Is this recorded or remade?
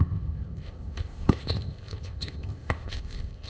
remade